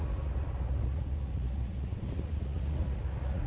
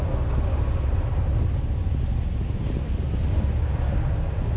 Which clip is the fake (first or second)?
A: first